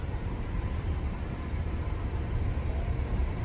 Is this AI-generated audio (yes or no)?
yes